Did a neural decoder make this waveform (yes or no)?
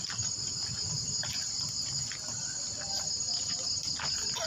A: no